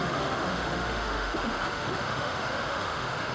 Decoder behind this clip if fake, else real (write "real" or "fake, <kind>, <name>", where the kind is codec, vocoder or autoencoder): fake, autoencoder, DAC-VAE